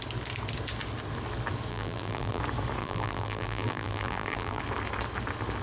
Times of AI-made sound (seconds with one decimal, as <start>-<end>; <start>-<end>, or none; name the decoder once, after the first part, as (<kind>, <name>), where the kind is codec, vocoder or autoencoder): 1.7-2.4 (vocoder, BigVGAN v2); 2.8-4.6